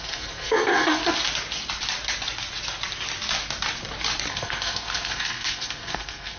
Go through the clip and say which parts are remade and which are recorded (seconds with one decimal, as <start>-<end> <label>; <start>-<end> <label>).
0.0-1.0 remade; 1.0-4.3 recorded; 4.3-6.4 remade